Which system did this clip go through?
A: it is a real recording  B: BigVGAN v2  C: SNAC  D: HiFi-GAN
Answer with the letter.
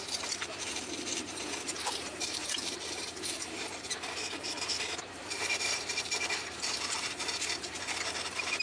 B